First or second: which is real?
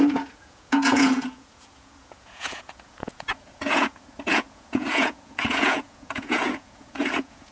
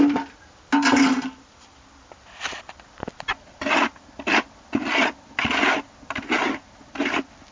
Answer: second